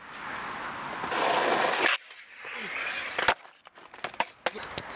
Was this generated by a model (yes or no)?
no